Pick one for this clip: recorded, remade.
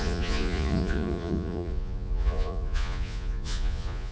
remade